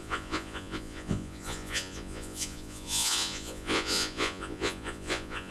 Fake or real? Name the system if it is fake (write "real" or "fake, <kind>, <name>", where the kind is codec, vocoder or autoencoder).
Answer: fake, vocoder, Vocos